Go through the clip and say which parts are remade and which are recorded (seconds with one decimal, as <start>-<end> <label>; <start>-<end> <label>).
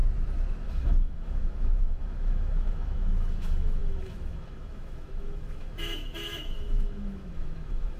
0.0-0.7 recorded; 0.7-8.0 remade